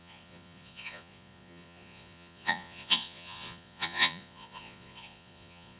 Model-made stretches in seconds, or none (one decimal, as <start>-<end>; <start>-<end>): 0.0-5.8